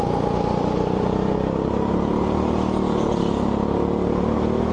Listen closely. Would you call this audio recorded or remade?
recorded